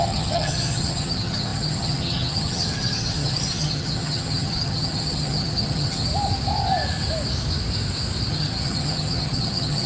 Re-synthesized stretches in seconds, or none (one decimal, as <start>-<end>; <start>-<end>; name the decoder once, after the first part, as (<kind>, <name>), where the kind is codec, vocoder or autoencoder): 0.0-6.1 (vocoder, HiFi-GAN); 8.3-9.9